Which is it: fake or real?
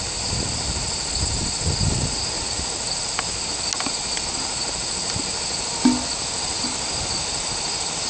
real